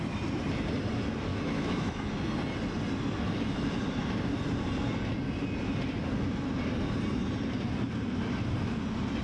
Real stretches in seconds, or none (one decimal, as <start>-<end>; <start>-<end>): 0.0-1.3; 2.1-9.2